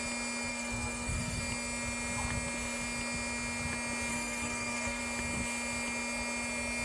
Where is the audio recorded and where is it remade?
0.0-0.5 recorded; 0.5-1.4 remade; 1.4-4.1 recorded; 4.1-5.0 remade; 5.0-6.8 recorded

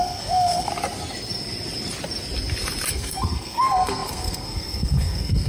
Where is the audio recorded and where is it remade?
0.0-0.7 remade; 0.7-2.9 recorded; 2.9-5.5 remade

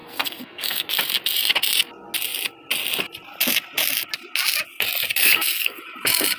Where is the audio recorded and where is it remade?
0.0-0.9 remade; 0.9-5.2 recorded; 5.2-5.8 remade; 5.8-6.4 recorded

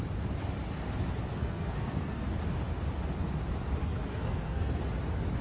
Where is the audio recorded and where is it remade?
0.0-1.3 recorded; 1.3-2.2 remade; 2.2-3.8 recorded; 3.8-4.8 remade; 4.8-5.4 recorded

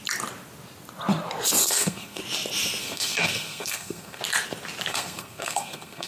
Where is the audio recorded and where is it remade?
0.0-1.6 recorded; 1.6-2.2 remade; 2.2-2.8 recorded; 2.8-4.2 remade; 4.2-4.9 recorded; 4.9-6.1 remade

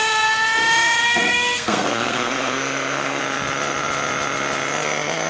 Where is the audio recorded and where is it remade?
0.0-1.0 recorded; 1.0-3.2 remade; 3.2-5.3 recorded

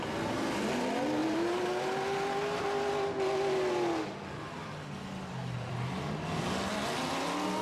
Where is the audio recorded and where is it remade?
0.0-7.6 recorded

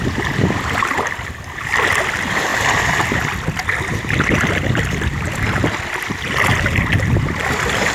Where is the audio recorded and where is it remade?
0.0-7.9 recorded